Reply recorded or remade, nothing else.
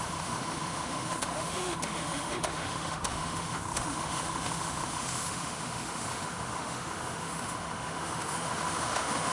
remade